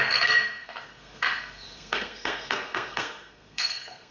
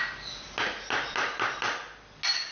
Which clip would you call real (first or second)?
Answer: second